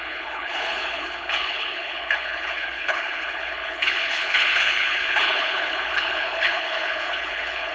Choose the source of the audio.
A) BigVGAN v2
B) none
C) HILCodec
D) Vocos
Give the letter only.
C